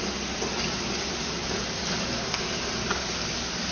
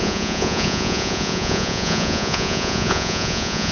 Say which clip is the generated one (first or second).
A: second